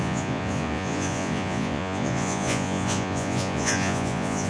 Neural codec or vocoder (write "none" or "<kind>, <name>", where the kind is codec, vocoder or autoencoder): vocoder, Vocos